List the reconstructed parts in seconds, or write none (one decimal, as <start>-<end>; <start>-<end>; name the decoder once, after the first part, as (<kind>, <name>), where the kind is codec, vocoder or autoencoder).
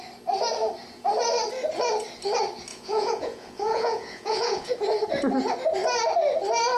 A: 2.7-4.7 (vocoder, Vocos)